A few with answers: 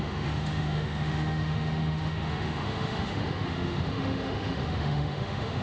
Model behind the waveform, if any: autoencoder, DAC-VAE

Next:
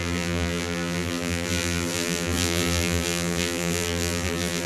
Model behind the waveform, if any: vocoder, BigVGAN v2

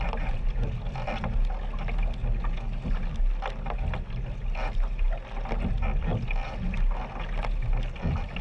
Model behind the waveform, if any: none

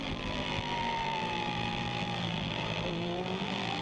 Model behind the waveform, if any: vocoder, BigVGAN v2